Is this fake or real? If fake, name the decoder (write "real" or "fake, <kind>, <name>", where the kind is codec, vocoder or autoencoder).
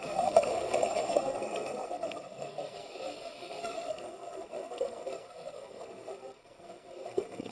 fake, codec, SNAC